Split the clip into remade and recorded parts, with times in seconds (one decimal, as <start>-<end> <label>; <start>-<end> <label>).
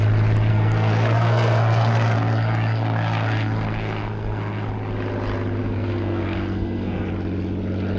0.0-0.5 recorded; 0.5-4.7 remade; 4.7-5.6 recorded; 5.6-7.1 remade; 7.1-8.0 recorded